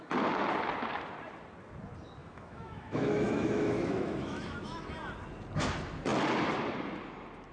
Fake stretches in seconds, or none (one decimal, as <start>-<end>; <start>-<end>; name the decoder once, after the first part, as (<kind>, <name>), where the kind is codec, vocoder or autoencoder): 2.2-4.9 (autoencoder, DAC-VAE)